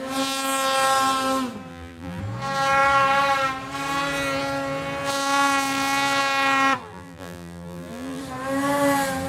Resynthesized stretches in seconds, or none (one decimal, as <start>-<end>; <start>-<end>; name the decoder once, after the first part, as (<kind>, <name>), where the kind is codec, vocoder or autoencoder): 1.7-2.2 (vocoder, BigVGAN v2); 6.8-8.2